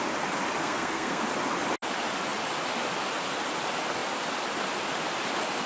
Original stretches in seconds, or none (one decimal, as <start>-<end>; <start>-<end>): 0.0-0.6; 1.2-5.7